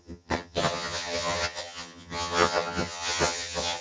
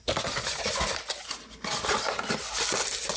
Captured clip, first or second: second